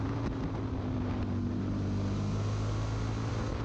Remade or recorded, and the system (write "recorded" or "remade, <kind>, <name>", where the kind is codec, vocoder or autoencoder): recorded